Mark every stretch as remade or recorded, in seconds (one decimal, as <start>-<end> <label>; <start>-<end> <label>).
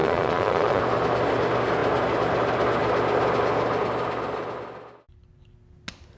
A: 0.0-0.8 remade; 0.8-6.2 recorded